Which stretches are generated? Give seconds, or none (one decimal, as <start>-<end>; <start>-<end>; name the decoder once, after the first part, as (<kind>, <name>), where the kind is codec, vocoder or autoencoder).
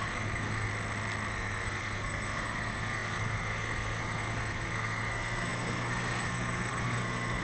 0.0-0.7 (codec, SNAC); 1.3-7.4